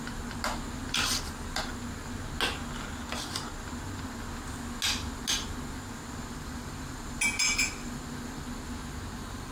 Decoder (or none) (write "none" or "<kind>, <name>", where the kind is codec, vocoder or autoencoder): none